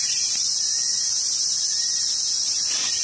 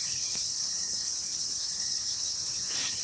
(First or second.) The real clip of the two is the first